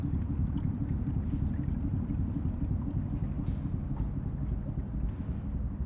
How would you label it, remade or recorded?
recorded